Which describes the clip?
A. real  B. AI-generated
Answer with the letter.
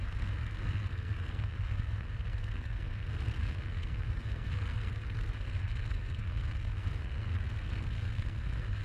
B